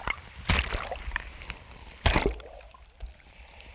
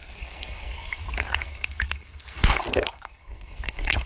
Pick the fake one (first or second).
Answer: second